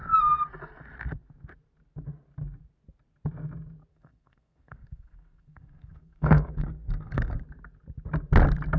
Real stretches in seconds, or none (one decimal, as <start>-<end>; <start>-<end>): 0.0-3.9; 7.4-8.8